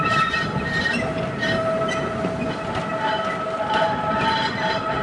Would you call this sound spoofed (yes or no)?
no